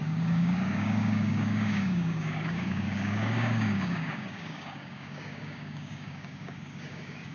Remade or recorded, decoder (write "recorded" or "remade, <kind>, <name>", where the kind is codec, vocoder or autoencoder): remade, codec, DAC